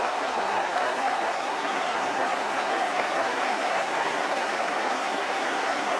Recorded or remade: remade